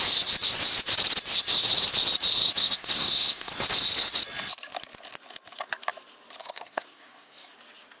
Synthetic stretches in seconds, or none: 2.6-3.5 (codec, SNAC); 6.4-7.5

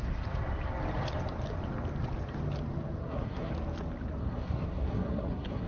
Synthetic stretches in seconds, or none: 3.0-3.5 (codec, SNAC); 4.2-5.7

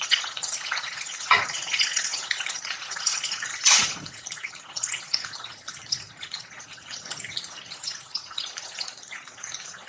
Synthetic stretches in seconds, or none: 0.0-9.9 (vocoder, Vocos)